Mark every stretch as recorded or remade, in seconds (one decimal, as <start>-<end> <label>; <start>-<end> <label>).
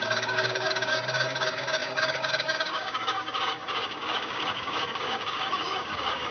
0.0-6.3 remade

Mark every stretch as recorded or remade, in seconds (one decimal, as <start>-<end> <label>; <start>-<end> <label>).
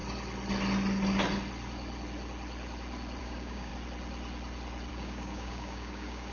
0.0-3.2 recorded; 3.2-3.7 remade; 3.7-4.9 recorded; 4.9-6.3 remade